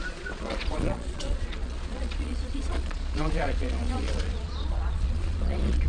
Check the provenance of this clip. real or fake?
fake